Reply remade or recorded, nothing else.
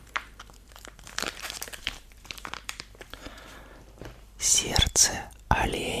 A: remade